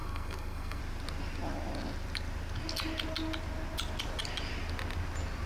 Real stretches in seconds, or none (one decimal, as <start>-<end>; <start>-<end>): 0.8-5.5